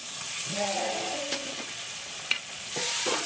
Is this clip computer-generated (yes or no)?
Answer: yes